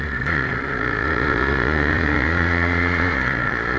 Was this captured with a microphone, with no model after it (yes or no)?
no